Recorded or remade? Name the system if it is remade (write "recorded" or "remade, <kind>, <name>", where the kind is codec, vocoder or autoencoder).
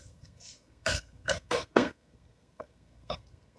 remade, codec, SNAC